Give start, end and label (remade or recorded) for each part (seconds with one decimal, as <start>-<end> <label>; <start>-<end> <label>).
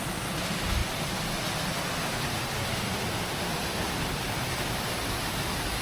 0.0-5.8 recorded